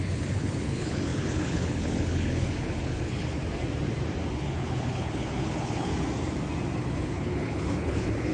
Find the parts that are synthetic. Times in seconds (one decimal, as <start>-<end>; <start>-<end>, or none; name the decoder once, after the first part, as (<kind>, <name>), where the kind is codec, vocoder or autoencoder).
0.0-3.4 (codec, HILCodec); 4.3-5.9; 6.8-8.3